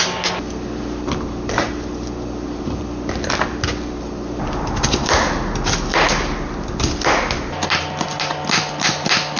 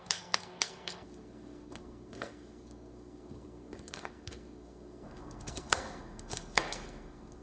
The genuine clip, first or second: first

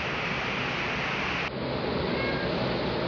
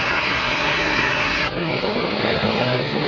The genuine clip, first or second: first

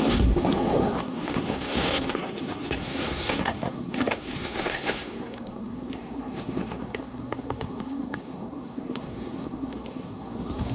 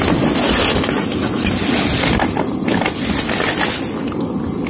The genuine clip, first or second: second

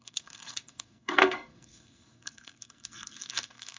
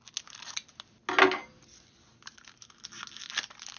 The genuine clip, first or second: second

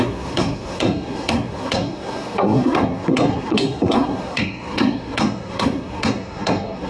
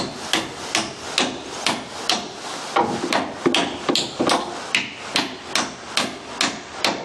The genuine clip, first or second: second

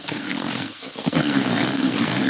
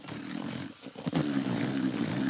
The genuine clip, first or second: second